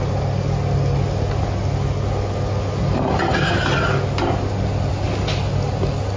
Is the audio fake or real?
real